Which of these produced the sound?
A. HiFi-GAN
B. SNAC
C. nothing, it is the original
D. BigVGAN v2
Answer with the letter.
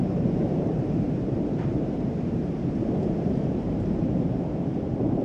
D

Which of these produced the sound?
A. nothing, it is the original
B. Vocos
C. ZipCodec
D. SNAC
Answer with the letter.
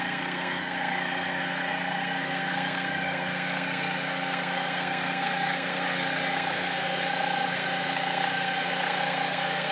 D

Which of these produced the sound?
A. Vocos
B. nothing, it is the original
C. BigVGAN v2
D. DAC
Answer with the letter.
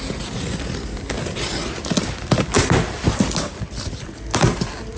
B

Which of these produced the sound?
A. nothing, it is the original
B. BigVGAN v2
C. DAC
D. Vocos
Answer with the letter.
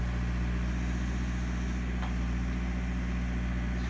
A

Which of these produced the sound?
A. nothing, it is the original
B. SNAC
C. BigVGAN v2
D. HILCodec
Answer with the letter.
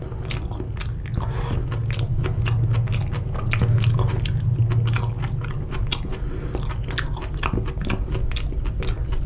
A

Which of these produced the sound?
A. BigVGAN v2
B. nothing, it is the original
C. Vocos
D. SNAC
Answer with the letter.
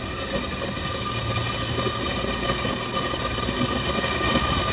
B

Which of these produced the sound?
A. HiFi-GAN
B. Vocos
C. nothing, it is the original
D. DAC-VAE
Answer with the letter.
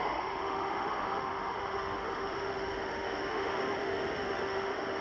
D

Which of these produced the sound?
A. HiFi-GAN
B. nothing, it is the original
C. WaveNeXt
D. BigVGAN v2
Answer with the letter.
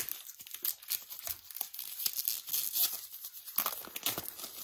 B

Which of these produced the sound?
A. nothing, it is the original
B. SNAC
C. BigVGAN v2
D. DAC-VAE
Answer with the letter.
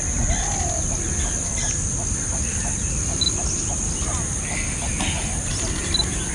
A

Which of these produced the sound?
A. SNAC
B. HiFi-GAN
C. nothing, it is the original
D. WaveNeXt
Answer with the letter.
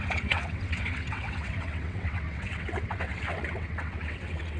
D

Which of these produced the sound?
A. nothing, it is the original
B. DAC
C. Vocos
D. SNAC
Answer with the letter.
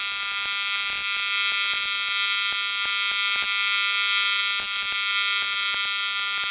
A